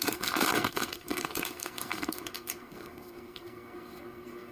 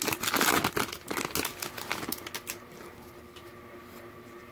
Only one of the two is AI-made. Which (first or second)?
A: first